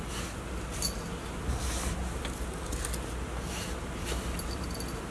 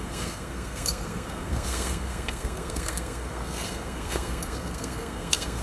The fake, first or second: second